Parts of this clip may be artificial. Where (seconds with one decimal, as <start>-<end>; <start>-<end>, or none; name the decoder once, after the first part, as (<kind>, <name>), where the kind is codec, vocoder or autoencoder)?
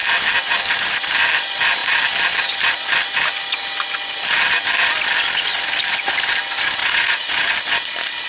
6.8-7.6 (vocoder, Vocos)